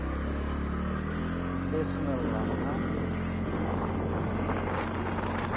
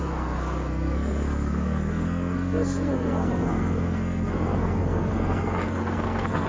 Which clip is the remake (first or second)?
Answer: second